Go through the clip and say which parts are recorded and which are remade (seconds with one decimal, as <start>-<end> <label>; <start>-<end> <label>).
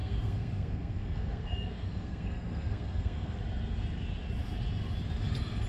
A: 0.0-3.4 remade; 3.4-5.7 recorded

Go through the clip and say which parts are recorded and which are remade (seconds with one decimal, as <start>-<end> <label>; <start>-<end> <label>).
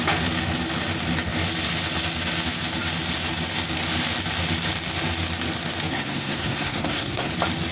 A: 0.0-5.9 recorded; 5.9-7.3 remade; 7.3-7.7 recorded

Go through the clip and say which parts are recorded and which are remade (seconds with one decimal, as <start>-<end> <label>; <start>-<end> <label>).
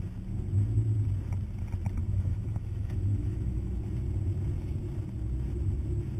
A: 0.0-2.0 recorded; 2.0-3.8 remade; 3.8-6.2 recorded